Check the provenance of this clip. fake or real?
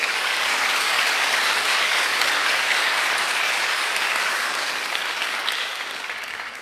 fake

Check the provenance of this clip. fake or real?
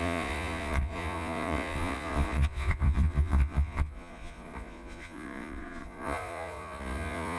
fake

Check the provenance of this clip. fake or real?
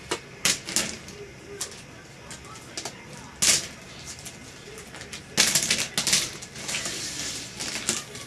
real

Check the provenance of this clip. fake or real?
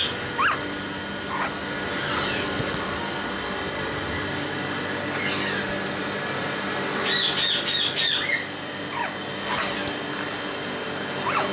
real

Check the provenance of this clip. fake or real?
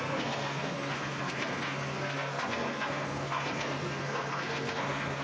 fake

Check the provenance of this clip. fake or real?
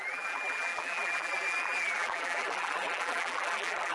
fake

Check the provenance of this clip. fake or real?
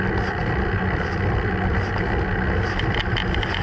real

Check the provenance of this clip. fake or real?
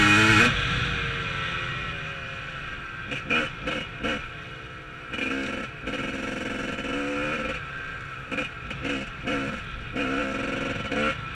real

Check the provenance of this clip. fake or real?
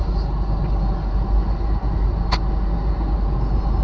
real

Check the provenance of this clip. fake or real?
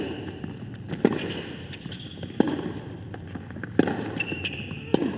real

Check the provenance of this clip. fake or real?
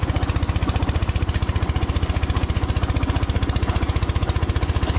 real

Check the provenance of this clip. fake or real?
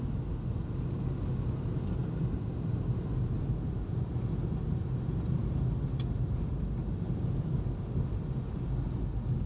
real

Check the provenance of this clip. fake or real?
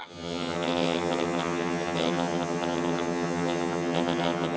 fake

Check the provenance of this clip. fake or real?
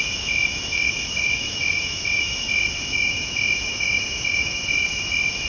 fake